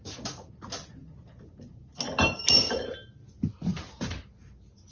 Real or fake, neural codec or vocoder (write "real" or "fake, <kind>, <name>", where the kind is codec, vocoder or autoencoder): real